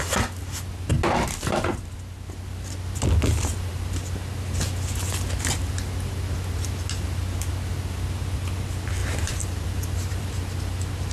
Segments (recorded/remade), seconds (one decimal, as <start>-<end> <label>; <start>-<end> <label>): 0.0-9.0 recorded; 9.0-10.4 remade; 10.4-11.1 recorded